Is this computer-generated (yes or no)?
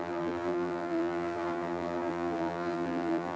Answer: yes